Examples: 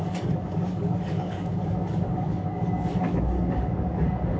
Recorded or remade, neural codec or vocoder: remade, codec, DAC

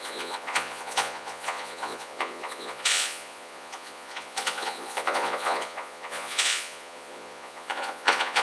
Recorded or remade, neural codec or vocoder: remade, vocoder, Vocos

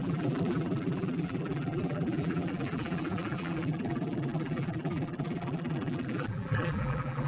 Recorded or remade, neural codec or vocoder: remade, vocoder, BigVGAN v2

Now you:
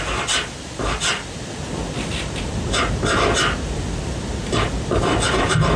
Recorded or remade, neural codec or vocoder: recorded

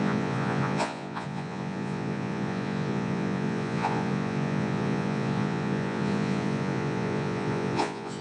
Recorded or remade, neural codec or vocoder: remade, vocoder, Vocos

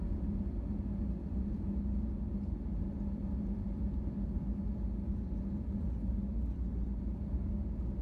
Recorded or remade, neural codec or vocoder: recorded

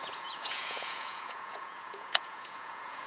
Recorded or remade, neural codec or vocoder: remade, vocoder, Vocos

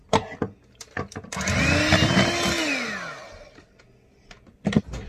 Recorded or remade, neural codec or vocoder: recorded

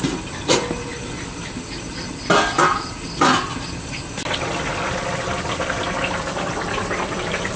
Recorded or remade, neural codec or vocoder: recorded